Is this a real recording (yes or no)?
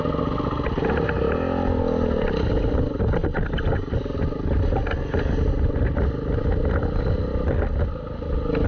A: yes